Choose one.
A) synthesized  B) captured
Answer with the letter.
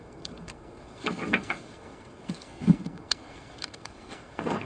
A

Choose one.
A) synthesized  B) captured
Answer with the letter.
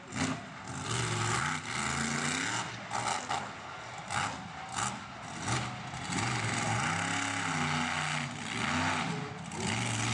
B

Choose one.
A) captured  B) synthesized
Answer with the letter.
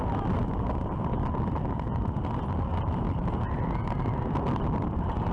A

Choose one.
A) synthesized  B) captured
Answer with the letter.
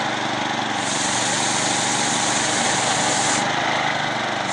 B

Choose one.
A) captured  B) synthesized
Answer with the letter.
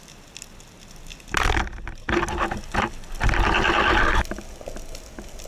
A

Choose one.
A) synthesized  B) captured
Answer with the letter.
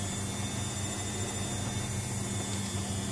B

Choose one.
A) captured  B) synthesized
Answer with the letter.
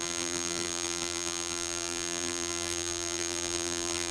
B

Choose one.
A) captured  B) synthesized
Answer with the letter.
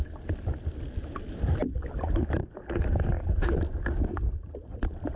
A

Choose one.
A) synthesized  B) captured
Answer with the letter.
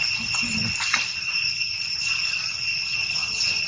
B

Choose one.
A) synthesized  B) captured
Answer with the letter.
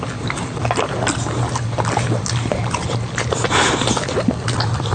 B